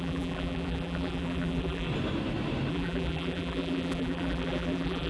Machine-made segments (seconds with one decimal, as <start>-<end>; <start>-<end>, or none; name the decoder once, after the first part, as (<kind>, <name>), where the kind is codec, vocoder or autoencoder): 0.0-1.9 (vocoder, BigVGAN v2); 2.7-5.1